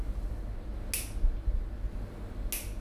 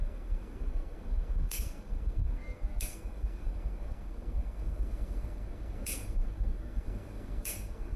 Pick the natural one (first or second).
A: first